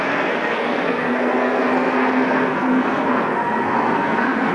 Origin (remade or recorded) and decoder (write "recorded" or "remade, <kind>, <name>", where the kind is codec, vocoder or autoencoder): remade, codec, SNAC